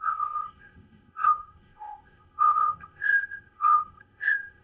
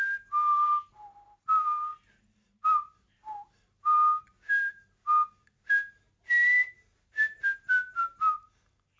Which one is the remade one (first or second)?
first